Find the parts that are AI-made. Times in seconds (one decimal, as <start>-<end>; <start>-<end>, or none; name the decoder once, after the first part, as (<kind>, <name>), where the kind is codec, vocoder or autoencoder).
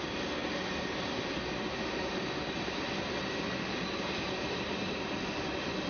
none